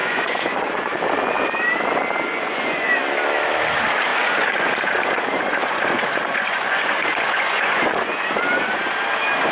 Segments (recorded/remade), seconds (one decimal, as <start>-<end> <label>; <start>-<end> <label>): 0.0-1.0 remade; 1.0-2.3 recorded; 2.3-3.0 remade; 3.0-4.1 recorded; 4.1-8.8 remade; 8.8-9.5 recorded